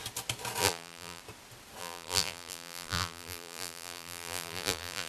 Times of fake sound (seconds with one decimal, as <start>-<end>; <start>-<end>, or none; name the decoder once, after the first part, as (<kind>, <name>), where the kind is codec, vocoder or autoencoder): 0.6-1.2 (vocoder, BigVGAN v2); 1.8-5.1